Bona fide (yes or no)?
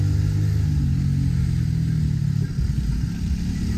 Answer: yes